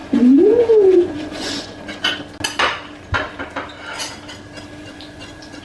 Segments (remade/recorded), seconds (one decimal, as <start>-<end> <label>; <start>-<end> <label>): 0.0-2.0 remade; 2.0-4.8 recorded; 4.8-5.6 remade

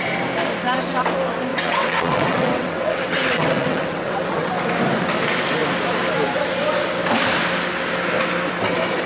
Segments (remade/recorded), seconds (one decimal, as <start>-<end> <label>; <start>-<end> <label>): 0.0-1.5 recorded; 1.5-4.5 remade; 4.5-9.1 recorded

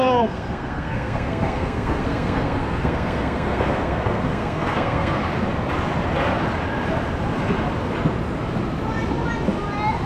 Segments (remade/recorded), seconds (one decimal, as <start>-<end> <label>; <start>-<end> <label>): 0.0-5.2 remade; 5.2-10.1 recorded

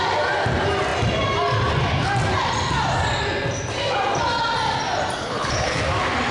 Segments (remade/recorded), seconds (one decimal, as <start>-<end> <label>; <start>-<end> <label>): 0.0-5.2 recorded; 5.2-5.8 remade; 5.8-6.3 recorded

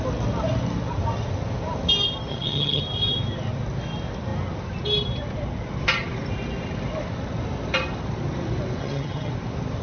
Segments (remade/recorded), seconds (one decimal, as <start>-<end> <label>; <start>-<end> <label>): 0.0-2.3 recorded; 2.3-2.8 remade; 2.8-8.8 recorded; 8.8-9.3 remade; 9.3-9.8 recorded

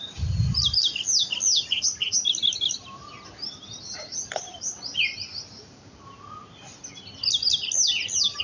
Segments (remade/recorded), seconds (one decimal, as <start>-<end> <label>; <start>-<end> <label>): 0.0-8.4 recorded